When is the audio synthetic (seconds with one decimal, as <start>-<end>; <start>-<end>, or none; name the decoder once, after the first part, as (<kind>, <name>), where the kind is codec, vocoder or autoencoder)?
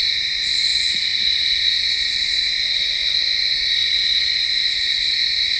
0.7-2.5 (vocoder, Vocos); 3.8-4.3